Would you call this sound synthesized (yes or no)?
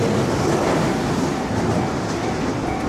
no